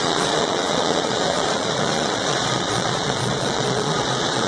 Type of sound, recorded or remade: remade